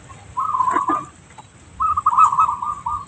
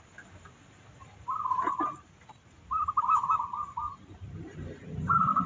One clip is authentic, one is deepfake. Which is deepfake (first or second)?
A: second